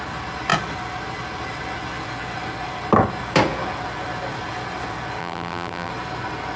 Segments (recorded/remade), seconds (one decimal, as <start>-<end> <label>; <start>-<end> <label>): 0.0-5.2 recorded; 5.2-5.9 remade; 5.9-6.6 recorded